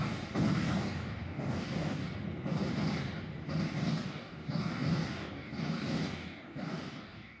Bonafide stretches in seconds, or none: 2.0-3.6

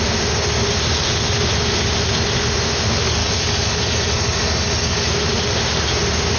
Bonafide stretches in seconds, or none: 0.0-3.2; 5.1-6.4